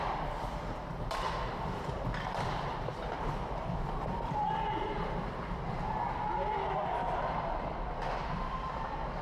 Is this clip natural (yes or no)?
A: no